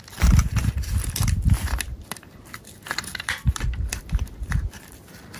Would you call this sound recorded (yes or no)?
yes